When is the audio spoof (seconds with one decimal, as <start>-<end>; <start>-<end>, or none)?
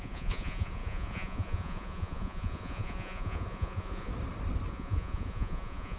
0.0-4.1; 4.7-6.0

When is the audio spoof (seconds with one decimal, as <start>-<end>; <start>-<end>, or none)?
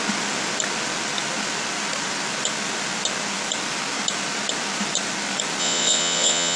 5.6-6.6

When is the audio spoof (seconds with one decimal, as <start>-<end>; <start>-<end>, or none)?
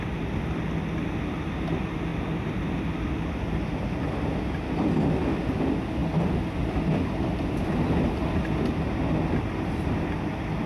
none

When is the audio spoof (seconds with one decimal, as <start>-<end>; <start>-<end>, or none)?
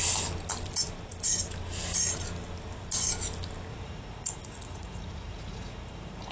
3.7-6.3